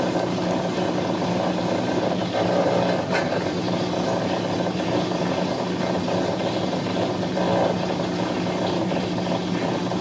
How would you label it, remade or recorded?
recorded